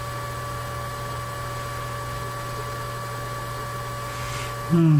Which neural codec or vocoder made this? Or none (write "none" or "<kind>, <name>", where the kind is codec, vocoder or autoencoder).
none